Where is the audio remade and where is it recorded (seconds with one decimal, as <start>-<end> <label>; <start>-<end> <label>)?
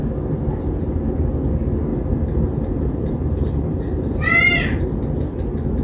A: 0.0-1.9 recorded; 1.9-4.8 remade; 4.8-5.8 recorded